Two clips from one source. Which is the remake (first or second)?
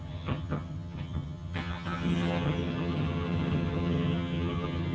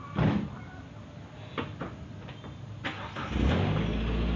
first